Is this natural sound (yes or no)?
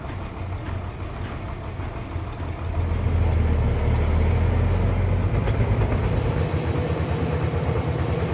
yes